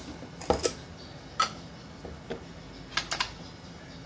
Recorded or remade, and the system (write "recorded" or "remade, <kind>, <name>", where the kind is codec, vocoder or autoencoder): recorded